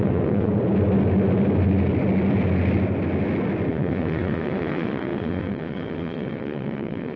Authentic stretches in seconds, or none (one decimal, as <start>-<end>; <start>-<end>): 0.5-3.7